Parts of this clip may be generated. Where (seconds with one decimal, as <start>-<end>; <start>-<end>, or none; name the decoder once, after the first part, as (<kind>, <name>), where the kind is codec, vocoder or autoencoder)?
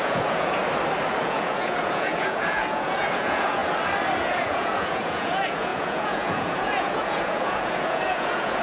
0.0-0.6 (vocoder, Vocos); 1.2-3.6; 4.2-8.6